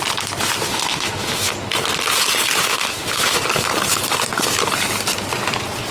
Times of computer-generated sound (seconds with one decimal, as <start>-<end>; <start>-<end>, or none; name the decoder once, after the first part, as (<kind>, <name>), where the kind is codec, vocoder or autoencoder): 0.7-1.5 (autoencoder, DAC-VAE); 2.6-3.4